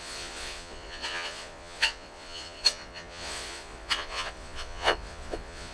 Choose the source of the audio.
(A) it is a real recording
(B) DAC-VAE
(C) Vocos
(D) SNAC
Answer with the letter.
C